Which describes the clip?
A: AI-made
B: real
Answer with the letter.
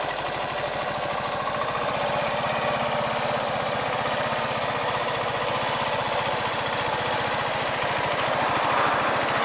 B